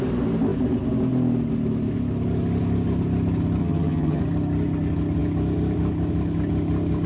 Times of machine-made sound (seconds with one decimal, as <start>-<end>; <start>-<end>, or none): 3.6-4.2